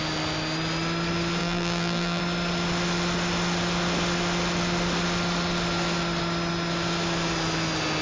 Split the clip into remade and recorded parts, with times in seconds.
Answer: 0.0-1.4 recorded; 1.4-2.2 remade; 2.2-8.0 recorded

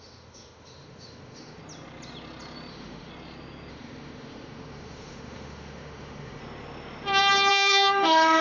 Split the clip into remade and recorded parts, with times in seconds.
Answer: 0.0-1.6 remade; 1.6-2.7 recorded; 2.7-3.1 remade; 3.1-3.7 recorded; 3.7-6.4 remade; 6.4-7.5 recorded; 7.5-8.4 remade

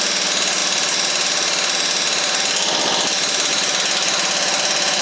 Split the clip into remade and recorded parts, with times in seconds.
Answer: 0.0-5.0 recorded